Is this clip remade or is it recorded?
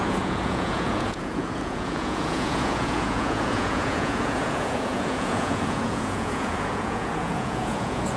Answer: remade